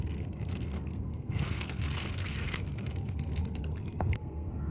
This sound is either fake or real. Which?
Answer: fake